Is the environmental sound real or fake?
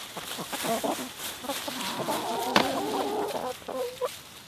real